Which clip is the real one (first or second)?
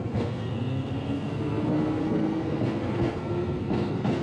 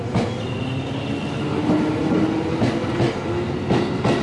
second